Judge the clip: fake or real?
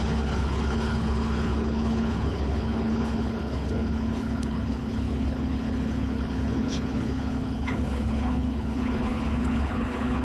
fake